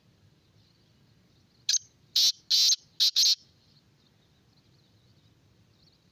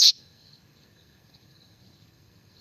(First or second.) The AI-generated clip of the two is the second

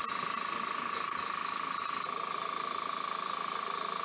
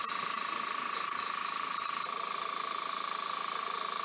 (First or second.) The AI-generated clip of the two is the second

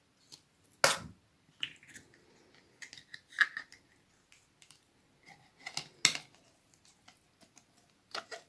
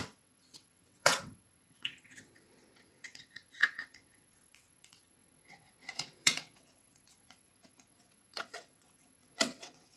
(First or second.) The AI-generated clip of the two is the second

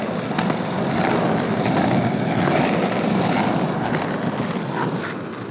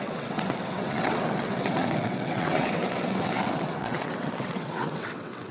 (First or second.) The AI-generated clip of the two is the second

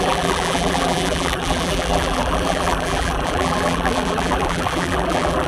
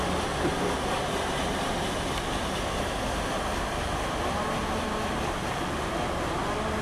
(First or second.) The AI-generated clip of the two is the first